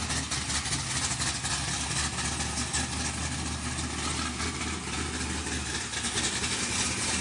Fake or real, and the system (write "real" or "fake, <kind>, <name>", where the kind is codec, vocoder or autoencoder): real